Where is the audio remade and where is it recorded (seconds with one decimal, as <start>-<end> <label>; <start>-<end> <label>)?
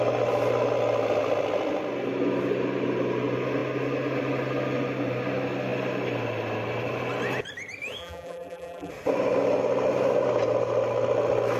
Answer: 0.0-8.0 recorded; 8.0-8.9 remade; 8.9-11.6 recorded